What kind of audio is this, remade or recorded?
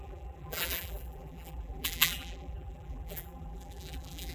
remade